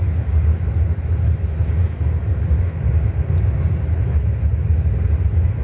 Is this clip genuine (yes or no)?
yes